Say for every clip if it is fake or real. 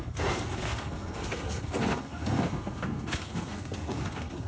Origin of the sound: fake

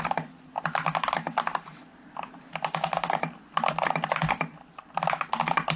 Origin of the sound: real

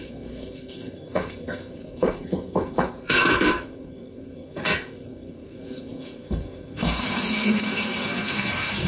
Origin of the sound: fake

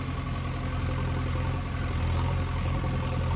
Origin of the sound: real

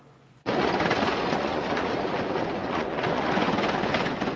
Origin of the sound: fake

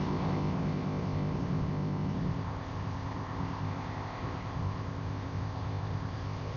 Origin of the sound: fake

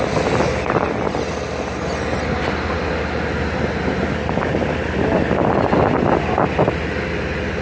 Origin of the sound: real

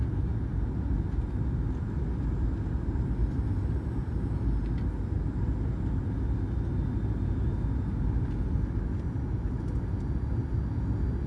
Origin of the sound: real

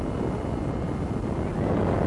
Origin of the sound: real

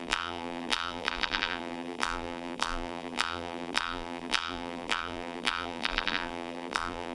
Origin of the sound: fake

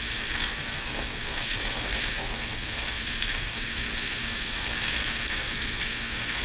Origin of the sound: fake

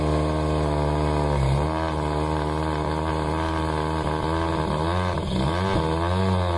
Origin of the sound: real